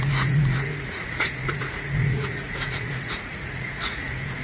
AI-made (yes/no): yes